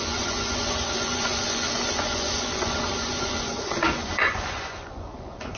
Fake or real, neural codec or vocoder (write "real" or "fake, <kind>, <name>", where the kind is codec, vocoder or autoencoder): fake, vocoder, Vocos